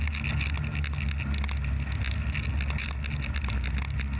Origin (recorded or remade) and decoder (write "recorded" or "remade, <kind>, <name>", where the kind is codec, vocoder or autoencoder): recorded